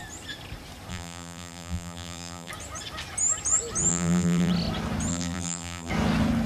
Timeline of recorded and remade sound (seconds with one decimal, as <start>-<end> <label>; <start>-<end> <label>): 0.0-0.9 recorded; 0.9-2.5 remade; 2.5-3.9 recorded; 3.9-4.5 remade; 4.5-5.1 recorded; 5.1-5.9 remade; 5.9-6.5 recorded